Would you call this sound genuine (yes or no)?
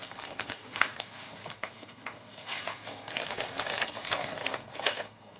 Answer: no